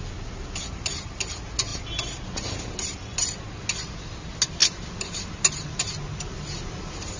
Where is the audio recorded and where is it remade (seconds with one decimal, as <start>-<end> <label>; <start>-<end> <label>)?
0.0-1.7 recorded; 1.7-3.4 remade; 3.4-4.6 recorded; 4.6-5.8 remade; 5.8-7.2 recorded